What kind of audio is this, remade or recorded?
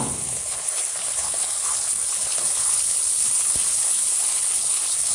remade